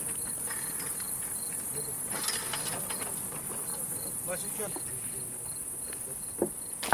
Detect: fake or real real